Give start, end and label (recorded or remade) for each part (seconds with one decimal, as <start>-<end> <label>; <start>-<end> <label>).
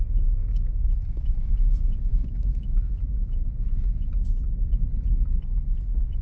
0.0-0.4 recorded; 0.4-1.5 remade; 1.5-2.1 recorded; 2.1-4.0 remade; 4.0-6.2 recorded